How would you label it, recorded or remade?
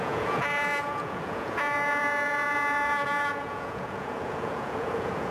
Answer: remade